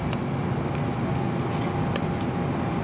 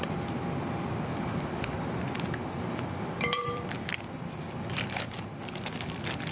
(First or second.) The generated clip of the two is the second